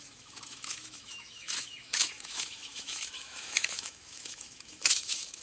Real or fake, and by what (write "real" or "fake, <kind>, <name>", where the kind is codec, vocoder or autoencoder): fake, autoencoder, DAC-VAE